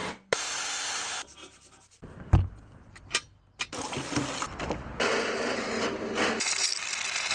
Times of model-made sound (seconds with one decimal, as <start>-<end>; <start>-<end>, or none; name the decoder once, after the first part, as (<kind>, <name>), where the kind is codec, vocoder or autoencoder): none